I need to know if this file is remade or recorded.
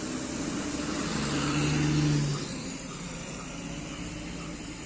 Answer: recorded